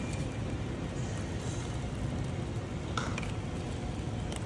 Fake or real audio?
real